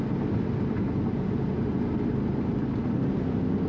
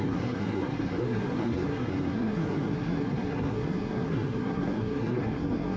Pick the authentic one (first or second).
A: first